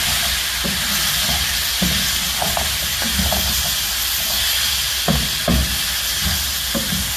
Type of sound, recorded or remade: recorded